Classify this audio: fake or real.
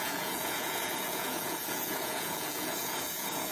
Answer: fake